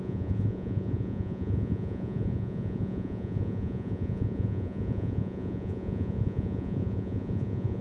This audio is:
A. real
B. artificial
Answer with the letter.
B